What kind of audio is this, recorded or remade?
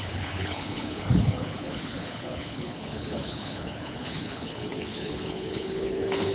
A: remade